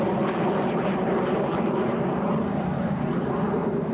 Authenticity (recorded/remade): recorded